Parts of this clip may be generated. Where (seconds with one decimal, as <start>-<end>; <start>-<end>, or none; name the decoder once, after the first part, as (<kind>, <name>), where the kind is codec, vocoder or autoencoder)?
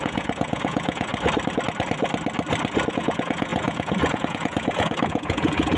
0.0-1.1 (vocoder, Vocos); 2.9-5.8